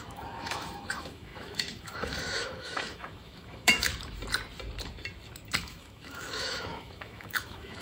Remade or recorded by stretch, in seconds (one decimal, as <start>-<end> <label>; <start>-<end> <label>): 0.0-3.9 remade; 3.9-5.6 recorded; 5.6-7.8 remade